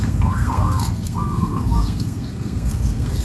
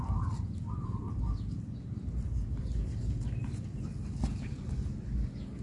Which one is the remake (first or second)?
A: first